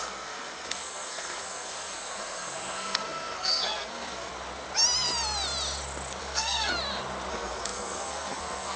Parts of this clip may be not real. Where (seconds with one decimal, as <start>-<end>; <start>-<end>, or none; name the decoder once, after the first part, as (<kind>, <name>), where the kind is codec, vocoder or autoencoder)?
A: 0.0-4.3 (codec, SNAC); 6.2-6.7; 7.3-8.8